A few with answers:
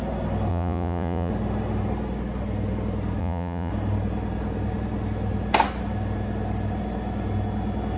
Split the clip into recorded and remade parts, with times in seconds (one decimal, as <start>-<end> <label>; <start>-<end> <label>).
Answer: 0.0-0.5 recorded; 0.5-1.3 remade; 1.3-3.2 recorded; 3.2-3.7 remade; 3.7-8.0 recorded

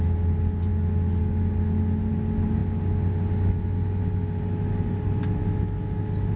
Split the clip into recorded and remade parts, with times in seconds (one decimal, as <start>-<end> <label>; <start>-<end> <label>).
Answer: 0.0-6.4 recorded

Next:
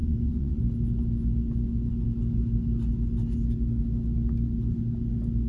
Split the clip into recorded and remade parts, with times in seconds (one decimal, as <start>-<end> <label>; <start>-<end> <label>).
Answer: 0.0-0.6 remade; 0.6-5.5 recorded

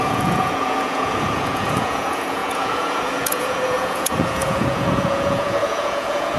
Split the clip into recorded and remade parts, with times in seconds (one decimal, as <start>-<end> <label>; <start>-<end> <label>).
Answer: 0.0-6.4 remade